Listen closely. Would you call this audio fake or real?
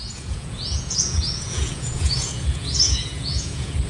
fake